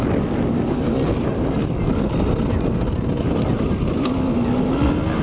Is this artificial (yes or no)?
no